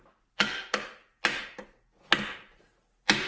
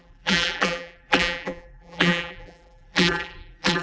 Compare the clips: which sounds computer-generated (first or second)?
second